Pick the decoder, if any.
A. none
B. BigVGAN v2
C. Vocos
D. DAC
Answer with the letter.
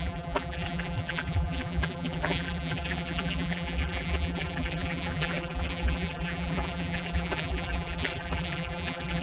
B